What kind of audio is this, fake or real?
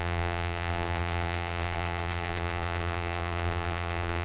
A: fake